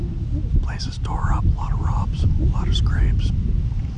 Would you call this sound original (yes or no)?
yes